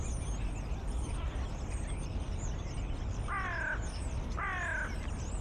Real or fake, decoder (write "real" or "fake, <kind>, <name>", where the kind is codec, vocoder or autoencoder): real